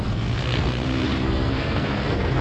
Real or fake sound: fake